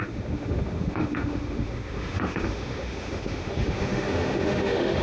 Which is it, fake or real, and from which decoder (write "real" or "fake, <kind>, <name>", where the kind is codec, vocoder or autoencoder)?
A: fake, autoencoder, DAC-VAE